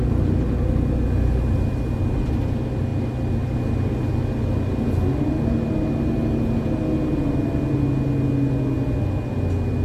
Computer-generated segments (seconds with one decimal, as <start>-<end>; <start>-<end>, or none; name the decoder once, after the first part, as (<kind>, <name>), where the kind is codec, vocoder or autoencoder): none